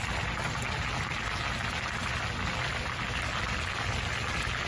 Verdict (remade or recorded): recorded